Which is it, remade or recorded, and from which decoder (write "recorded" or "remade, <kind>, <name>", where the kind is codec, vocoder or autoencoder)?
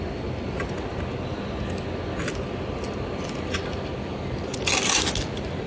recorded